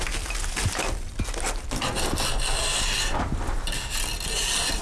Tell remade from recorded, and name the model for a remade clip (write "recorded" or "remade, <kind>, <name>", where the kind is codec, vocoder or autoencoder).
recorded